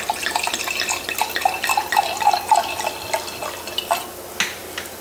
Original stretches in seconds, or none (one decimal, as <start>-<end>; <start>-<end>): 0.0-5.0